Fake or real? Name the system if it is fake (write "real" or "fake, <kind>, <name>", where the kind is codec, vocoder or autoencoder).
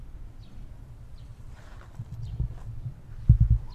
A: real